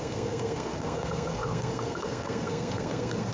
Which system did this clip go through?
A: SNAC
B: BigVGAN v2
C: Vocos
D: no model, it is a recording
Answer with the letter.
A